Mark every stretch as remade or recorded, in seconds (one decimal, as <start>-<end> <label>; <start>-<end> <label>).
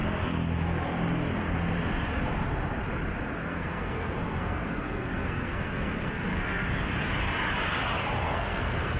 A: 0.0-3.4 recorded; 3.4-6.7 remade; 6.7-8.2 recorded; 8.2-9.0 remade